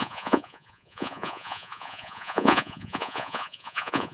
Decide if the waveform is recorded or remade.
remade